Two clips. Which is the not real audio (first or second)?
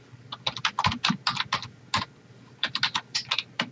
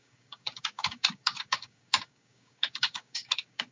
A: second